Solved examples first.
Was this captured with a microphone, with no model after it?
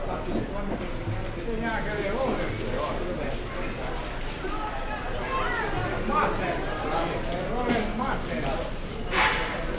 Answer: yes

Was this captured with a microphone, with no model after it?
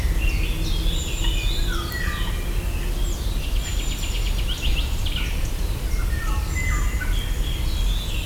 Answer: yes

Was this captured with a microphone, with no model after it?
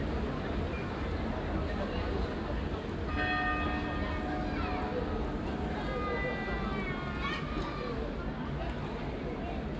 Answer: yes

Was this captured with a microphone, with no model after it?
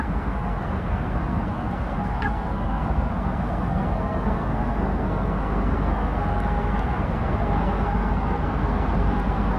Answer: no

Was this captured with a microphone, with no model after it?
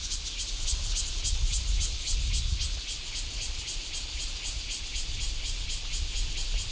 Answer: yes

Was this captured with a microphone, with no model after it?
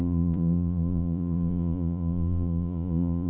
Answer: no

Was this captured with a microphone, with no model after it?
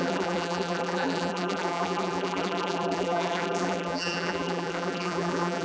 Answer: no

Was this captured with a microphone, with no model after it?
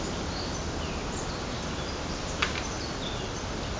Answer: yes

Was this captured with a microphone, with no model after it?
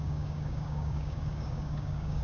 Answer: no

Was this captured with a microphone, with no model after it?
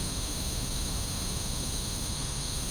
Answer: no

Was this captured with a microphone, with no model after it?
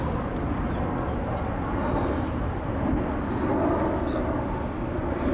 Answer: yes